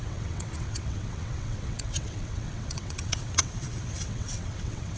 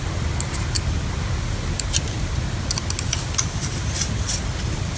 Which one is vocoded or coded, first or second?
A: first